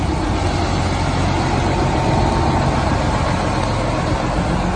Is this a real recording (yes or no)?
yes